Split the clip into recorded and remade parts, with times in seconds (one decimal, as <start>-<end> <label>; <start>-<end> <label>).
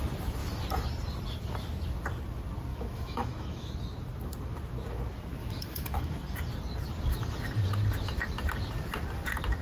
0.0-2.7 recorded; 2.7-3.7 remade; 3.7-5.4 recorded; 5.4-6.2 remade; 6.2-9.6 recorded